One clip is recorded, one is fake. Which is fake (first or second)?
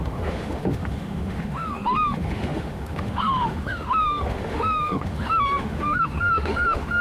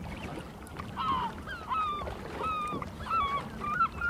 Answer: first